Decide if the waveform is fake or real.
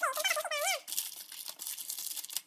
real